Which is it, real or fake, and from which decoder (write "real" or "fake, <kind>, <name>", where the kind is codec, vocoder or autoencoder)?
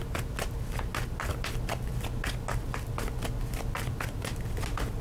real